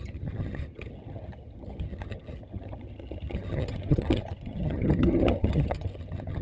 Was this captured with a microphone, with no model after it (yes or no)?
no